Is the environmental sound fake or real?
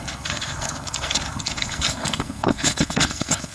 fake